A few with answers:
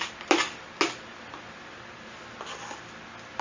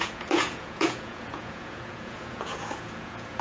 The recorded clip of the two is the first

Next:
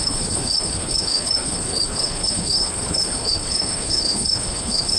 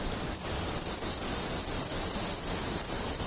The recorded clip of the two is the second